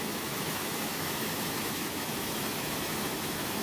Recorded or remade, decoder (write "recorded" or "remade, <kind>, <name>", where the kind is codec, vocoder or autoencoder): remade, autoencoder, DAC-VAE